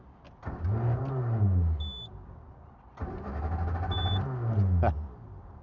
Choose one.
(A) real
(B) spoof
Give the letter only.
A